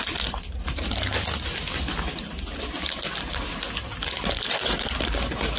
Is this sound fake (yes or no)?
no